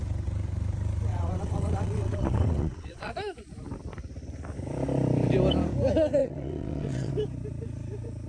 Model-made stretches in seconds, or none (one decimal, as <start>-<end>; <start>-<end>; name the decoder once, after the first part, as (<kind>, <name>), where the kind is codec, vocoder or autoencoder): 1.1-3.1 (vocoder, WaveNeXt); 6.2-7.1